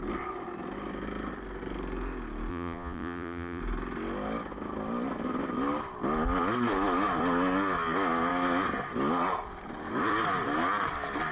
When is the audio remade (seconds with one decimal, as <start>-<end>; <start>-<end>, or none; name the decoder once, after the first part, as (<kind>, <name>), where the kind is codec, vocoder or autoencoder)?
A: 2.5-3.6 (vocoder, Vocos)